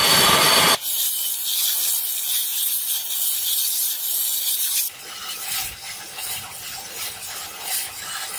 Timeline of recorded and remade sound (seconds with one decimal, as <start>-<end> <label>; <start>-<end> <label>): 0.0-1.1 remade; 1.1-4.3 recorded; 4.3-7.9 remade; 7.9-8.4 recorded